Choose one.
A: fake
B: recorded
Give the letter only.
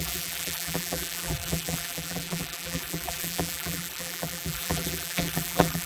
A